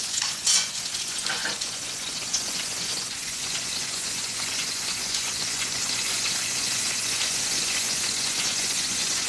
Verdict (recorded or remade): remade